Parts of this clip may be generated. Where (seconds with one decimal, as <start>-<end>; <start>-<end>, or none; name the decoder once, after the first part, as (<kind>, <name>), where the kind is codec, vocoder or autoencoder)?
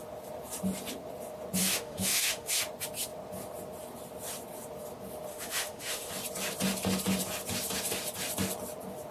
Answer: 1.6-2.6 (autoencoder, DAC-VAE); 5.3-6.1